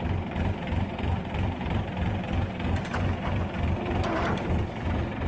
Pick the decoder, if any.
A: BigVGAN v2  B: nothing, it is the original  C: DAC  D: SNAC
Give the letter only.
A